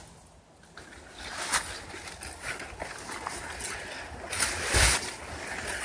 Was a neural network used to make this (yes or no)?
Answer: no